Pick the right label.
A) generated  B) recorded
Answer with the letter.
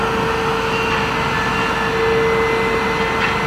B